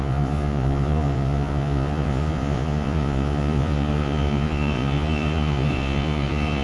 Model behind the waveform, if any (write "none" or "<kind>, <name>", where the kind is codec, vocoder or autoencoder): vocoder, Vocos